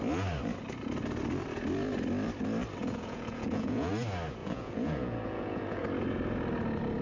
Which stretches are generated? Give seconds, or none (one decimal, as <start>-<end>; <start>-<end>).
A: 2.8-3.9; 4.4-5.8